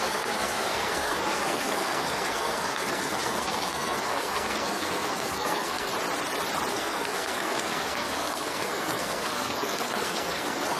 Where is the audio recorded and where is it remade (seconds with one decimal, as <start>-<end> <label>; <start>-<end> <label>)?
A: 0.0-5.9 remade; 5.9-6.7 recorded; 6.7-10.8 remade